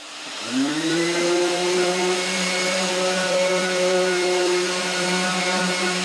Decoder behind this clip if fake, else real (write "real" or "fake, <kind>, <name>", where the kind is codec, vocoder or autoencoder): fake, vocoder, BigVGAN v2